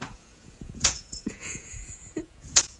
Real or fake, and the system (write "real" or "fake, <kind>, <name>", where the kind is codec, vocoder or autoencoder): fake, vocoder, Vocos